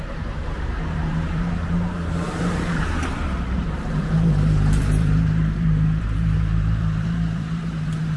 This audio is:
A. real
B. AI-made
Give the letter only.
B